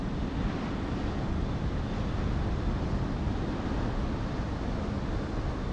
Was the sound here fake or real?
real